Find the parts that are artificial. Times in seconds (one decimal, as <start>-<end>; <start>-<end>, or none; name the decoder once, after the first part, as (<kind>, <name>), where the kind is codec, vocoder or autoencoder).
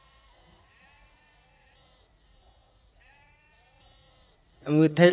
0.0-5.1 (vocoder, Vocos)